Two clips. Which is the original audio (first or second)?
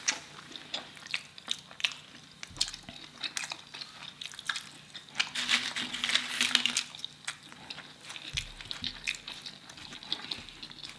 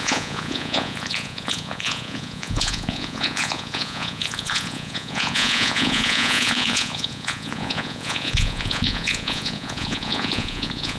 first